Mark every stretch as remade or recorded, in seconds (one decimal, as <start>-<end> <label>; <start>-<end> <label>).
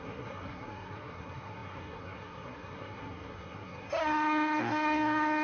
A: 0.0-5.4 remade